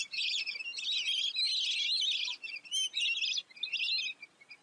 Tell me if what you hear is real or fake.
real